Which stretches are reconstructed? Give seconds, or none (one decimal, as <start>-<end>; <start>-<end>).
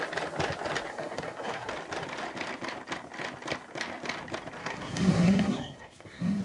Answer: 0.9-1.7; 4.6-6.4